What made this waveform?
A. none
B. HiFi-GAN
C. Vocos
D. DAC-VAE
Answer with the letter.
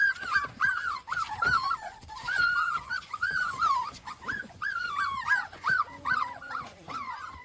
C